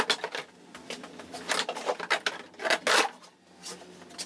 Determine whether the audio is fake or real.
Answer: real